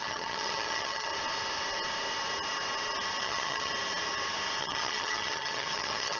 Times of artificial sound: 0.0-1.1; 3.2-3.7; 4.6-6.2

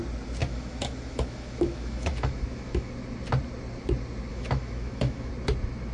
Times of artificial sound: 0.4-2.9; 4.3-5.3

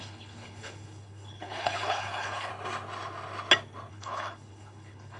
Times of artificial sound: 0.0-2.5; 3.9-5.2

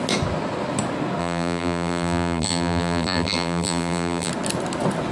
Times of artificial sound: 1.2-4.3

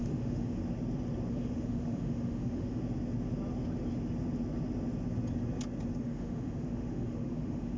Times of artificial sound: 0.0-0.6; 1.3-2.8; 6.0-7.8

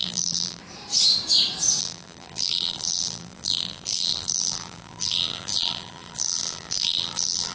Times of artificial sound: 0.0-0.6; 1.8-7.5